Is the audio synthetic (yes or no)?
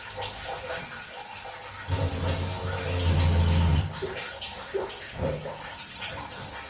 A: no